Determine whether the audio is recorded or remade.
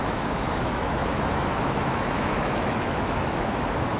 remade